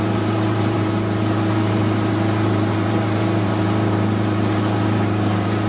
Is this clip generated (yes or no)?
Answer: yes